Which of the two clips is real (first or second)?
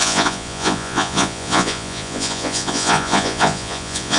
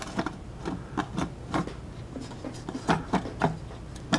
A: second